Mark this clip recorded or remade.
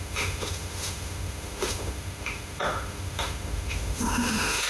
remade